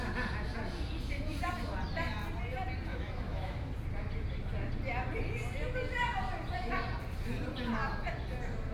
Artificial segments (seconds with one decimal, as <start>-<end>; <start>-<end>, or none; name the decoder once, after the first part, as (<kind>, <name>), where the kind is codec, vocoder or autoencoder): 2.9-3.7 (autoencoder, DAC-VAE)